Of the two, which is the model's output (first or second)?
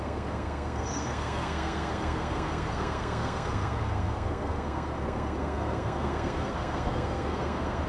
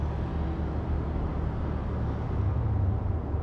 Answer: first